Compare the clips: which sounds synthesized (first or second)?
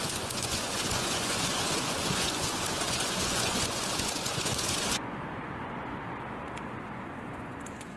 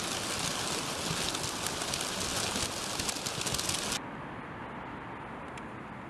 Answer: first